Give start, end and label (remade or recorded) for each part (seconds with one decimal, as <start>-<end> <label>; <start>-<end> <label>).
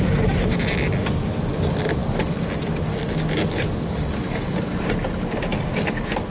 0.0-6.3 recorded